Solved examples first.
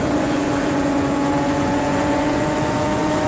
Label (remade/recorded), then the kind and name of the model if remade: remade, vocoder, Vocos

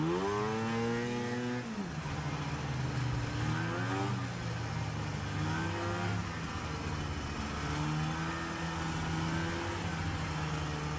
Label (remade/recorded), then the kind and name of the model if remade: recorded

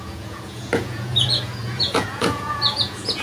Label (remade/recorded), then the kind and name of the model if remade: remade, vocoder, Vocos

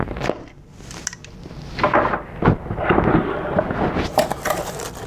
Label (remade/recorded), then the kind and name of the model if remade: recorded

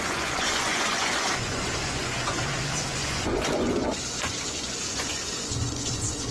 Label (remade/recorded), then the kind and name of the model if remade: remade, vocoder, Vocos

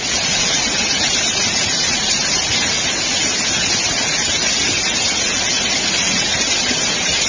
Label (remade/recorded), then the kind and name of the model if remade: recorded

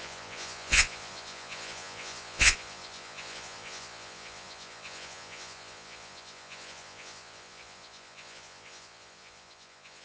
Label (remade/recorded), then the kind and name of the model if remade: remade, vocoder, Vocos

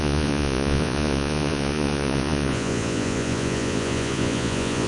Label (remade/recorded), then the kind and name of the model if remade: remade, vocoder, Vocos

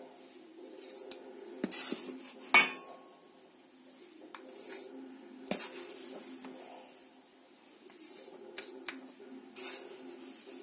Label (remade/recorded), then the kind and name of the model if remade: recorded